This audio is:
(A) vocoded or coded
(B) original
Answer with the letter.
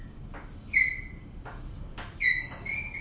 B